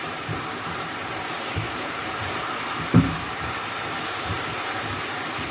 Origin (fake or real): fake